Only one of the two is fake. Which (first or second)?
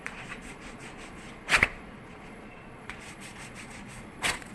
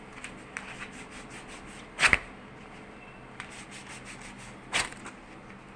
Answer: first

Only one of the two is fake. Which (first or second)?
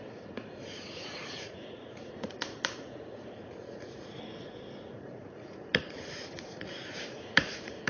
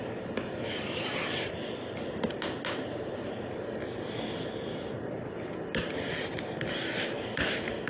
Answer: first